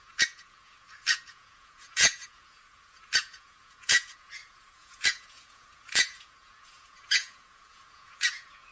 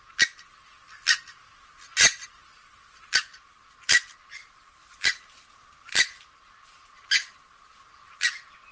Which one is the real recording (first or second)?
second